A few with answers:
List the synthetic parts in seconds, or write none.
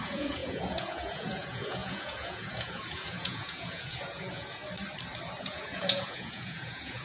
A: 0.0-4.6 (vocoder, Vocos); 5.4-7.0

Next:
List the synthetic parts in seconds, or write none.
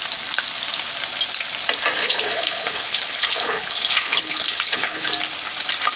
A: 2.0-5.1 (codec, HILCodec)